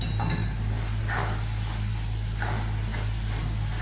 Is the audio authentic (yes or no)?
yes